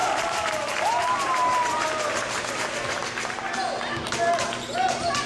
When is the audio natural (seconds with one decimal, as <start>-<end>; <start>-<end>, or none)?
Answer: 0.0-5.3